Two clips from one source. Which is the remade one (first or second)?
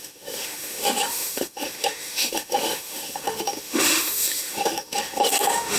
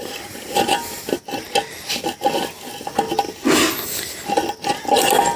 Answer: first